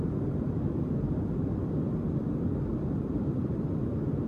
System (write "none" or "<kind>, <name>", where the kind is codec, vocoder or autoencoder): vocoder, BigVGAN v2